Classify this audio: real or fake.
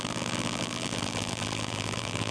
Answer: fake